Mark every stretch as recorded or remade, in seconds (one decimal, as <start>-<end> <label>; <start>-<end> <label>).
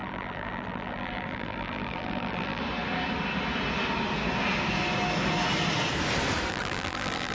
0.0-2.6 remade; 2.6-6.5 recorded; 6.5-7.3 remade